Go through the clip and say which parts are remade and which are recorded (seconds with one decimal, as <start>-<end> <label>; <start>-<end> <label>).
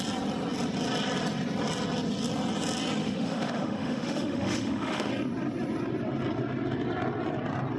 0.0-3.0 recorded; 3.0-5.1 remade; 5.1-7.8 recorded